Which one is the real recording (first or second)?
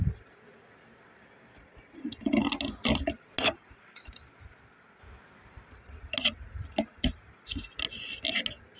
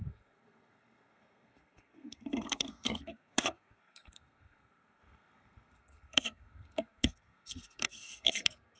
first